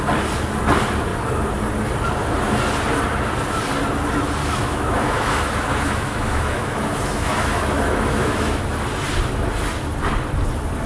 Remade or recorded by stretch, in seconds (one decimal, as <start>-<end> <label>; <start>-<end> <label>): 0.0-4.4 recorded; 4.4-8.6 remade; 8.6-10.9 recorded